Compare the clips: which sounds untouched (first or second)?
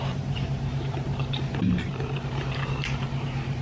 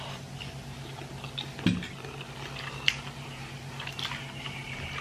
second